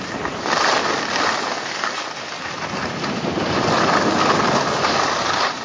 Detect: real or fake real